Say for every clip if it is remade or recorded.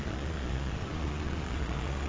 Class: remade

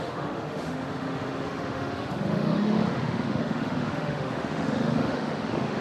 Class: remade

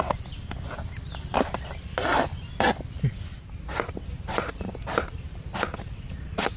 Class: recorded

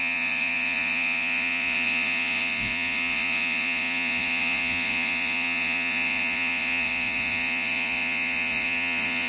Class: remade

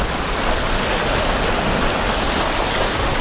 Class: recorded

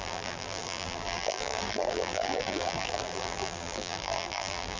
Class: remade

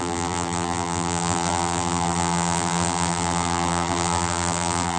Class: remade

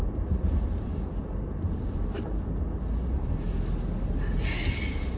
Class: recorded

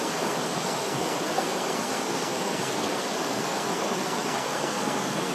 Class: remade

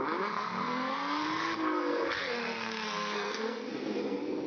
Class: remade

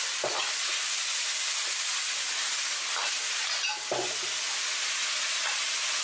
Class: recorded